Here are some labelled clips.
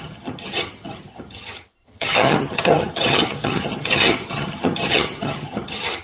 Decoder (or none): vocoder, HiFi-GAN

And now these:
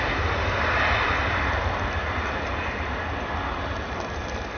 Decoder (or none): none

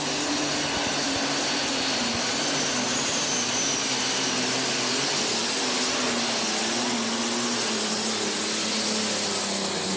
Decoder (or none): none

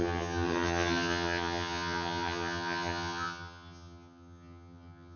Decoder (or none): vocoder, HiFi-GAN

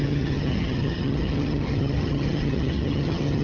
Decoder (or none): vocoder, HiFi-GAN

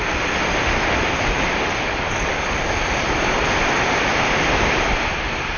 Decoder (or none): none